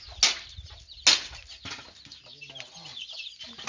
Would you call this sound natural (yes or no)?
yes